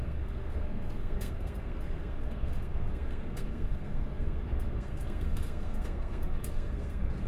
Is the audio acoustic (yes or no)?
no